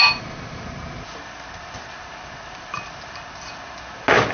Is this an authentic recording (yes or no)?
yes